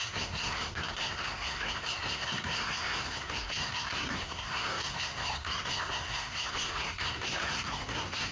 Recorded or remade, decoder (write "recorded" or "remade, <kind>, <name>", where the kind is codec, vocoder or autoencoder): remade, codec, SNAC